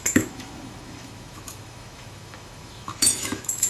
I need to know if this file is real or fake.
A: fake